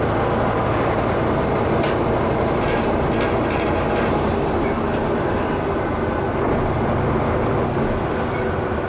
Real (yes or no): yes